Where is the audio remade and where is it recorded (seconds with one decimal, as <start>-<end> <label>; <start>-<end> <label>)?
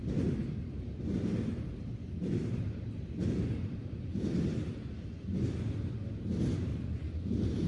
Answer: 0.0-4.6 remade; 4.6-6.7 recorded; 6.7-7.7 remade